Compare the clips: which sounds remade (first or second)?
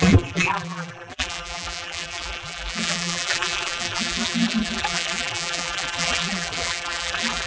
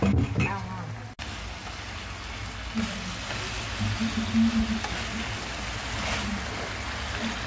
first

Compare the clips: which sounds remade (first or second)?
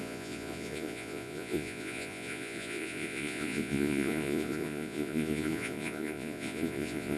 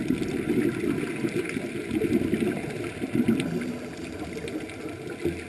first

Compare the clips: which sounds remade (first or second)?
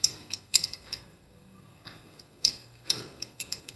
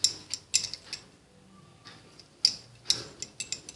first